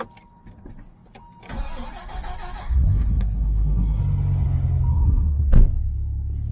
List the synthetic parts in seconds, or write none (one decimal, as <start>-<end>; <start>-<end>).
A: 2.6-4.0; 4.9-5.5